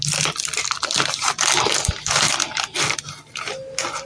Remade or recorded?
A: recorded